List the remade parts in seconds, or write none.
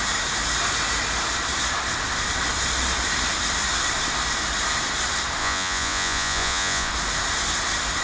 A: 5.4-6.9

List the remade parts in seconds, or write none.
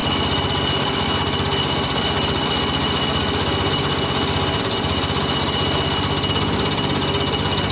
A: none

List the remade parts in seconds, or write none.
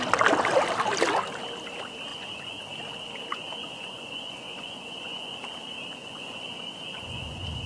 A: 2.1-2.6; 3.3-5.4; 6.0-7.7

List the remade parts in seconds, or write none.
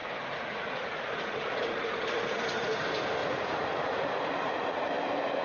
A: 0.0-2.4; 3.2-4.9